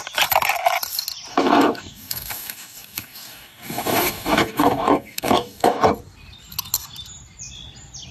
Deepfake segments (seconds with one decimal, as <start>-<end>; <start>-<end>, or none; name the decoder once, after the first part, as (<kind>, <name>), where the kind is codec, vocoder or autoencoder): 1.3-5.9 (codec, DAC)